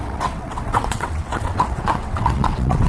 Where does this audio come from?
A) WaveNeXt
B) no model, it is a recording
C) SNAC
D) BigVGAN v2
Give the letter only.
A